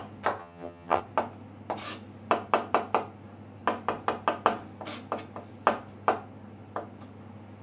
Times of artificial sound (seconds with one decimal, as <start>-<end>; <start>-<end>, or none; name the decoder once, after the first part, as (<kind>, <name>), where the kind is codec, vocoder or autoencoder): 0.4-1.0 (vocoder, HiFi-GAN)